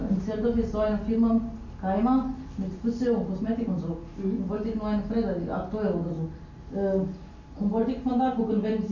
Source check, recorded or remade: recorded